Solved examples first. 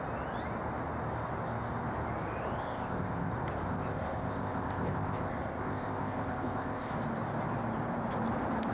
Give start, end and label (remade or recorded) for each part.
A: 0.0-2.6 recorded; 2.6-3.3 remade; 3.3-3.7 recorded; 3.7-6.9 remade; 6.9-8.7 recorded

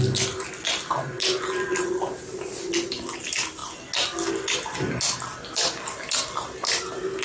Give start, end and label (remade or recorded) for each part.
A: 0.0-7.2 recorded

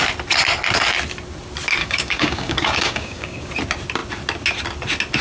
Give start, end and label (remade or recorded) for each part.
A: 0.0-1.8 recorded; 1.8-3.5 remade; 3.5-5.2 recorded

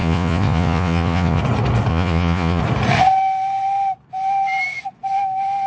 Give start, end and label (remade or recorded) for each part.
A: 0.0-1.4 remade; 1.4-1.9 recorded; 1.9-2.6 remade; 2.6-5.7 recorded

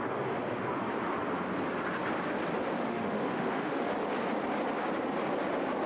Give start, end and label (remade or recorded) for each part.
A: 0.0-2.7 recorded; 2.7-3.9 remade; 3.9-5.9 recorded

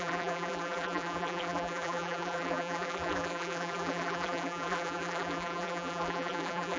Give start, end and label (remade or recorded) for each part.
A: 0.0-6.8 remade

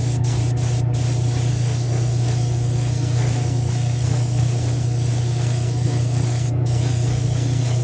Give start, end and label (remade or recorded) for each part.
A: 0.0-0.4 remade; 0.4-1.5 recorded; 1.5-7.8 remade

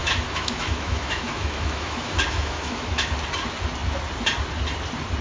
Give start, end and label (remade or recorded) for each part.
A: 0.0-3.1 remade; 3.1-5.2 recorded